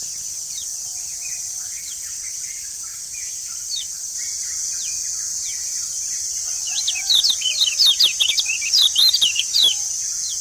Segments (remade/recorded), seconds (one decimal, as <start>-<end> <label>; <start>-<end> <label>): 0.0-0.7 recorded; 0.7-1.2 remade; 1.2-2.9 recorded; 2.9-4.4 remade; 4.4-5.5 recorded; 5.5-9.8 remade; 9.8-10.4 recorded